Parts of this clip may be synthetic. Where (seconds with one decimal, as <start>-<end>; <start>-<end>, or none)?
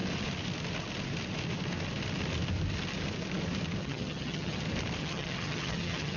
3.8-4.6; 5.0-6.2